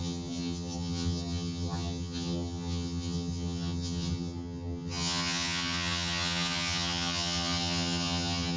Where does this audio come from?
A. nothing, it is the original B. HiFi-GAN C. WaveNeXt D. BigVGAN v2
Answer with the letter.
B